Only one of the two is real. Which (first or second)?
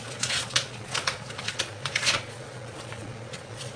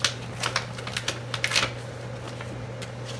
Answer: second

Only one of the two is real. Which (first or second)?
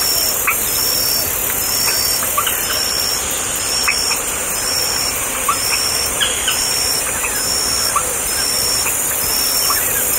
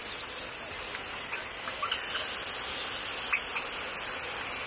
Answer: second